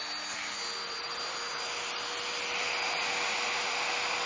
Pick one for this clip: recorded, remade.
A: recorded